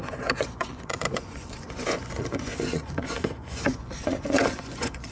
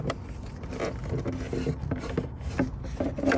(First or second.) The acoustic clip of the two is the second